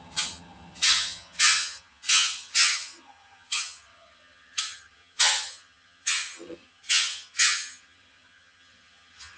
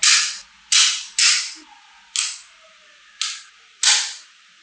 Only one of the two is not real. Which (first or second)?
first